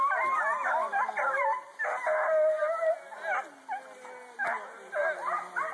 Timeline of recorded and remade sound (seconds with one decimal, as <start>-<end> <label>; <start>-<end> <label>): 0.0-5.7 recorded